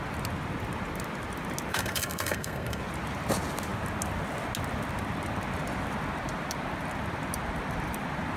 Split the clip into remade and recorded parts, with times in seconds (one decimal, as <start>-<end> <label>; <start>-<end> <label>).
0.0-1.7 recorded; 1.7-2.8 remade; 2.8-8.4 recorded